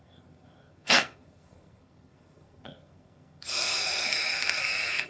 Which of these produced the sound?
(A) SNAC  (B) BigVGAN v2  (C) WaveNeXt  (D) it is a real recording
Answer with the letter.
A